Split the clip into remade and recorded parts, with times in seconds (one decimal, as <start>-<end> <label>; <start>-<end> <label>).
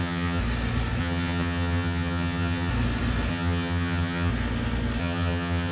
0.0-0.4 remade; 0.4-1.0 recorded; 1.0-2.7 remade; 2.7-3.3 recorded; 3.3-4.3 remade; 4.3-5.0 recorded; 5.0-5.7 remade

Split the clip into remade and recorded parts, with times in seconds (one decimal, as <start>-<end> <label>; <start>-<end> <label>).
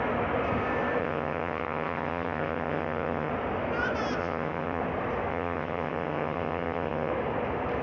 0.0-1.0 recorded; 1.0-3.3 remade; 3.3-4.2 recorded; 4.2-4.8 remade; 4.8-5.3 recorded; 5.3-7.1 remade; 7.1-7.8 recorded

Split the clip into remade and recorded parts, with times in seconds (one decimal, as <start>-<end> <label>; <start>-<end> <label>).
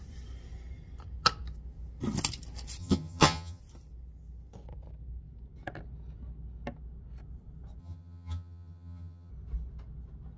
0.0-2.8 recorded; 2.8-3.6 remade; 3.6-7.8 recorded; 7.8-9.3 remade; 9.3-10.4 recorded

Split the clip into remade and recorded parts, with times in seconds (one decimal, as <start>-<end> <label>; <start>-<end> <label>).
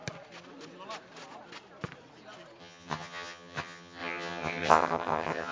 0.0-2.6 recorded; 2.6-5.5 remade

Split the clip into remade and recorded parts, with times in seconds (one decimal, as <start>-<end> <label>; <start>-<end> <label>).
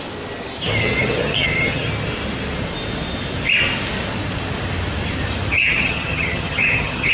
0.0-0.8 recorded; 0.8-1.9 remade; 1.9-5.6 recorded; 5.6-7.1 remade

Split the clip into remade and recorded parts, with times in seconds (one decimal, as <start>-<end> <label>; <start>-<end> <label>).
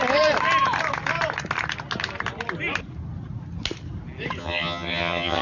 0.0-4.4 recorded; 4.4-5.4 remade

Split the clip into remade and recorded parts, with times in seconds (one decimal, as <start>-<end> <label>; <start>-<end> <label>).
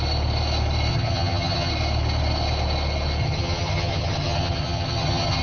0.0-0.9 recorded; 0.9-1.7 remade; 1.7-3.2 recorded; 3.2-5.4 remade